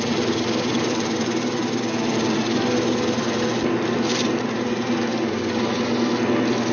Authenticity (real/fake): real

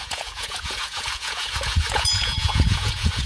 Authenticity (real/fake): fake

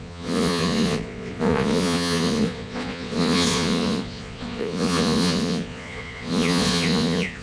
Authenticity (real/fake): fake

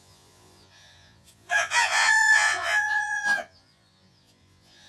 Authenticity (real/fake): fake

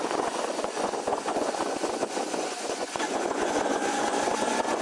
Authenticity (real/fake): fake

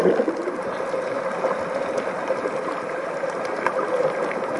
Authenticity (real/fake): real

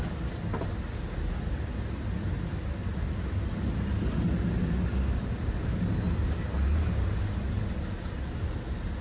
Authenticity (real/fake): real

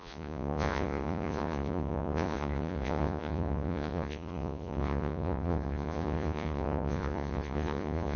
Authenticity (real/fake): fake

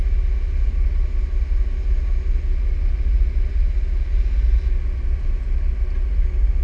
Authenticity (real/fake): real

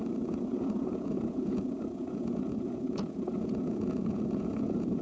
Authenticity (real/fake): fake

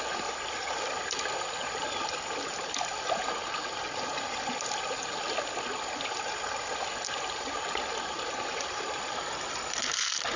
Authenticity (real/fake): real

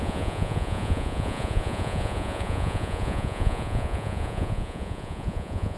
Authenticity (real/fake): fake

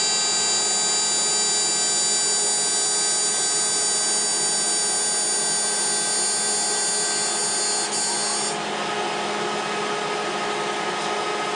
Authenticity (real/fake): real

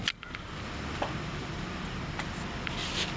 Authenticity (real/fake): real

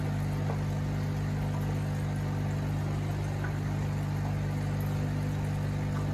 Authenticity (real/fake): real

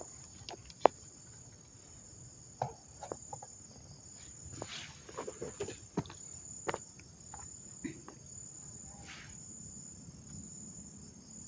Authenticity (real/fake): real